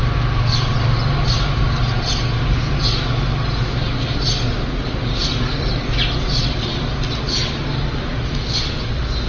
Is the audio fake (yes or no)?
no